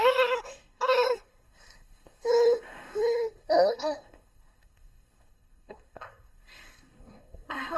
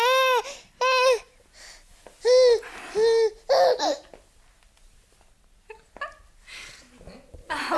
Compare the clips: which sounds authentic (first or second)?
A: second